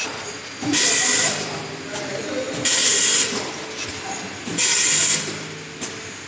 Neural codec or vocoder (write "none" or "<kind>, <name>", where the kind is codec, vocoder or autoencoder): none